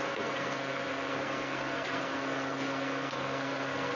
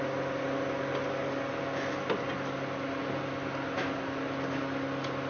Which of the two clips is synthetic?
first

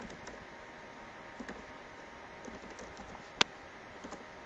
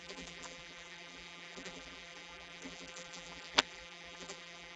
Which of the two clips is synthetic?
second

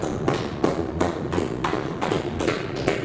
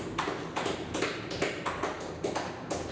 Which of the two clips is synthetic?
first